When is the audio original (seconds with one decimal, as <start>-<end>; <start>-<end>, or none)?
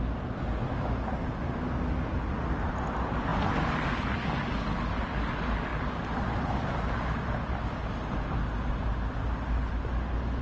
0.0-5.7; 7.6-10.4